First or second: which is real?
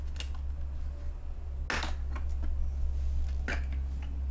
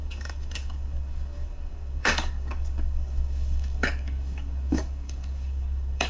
first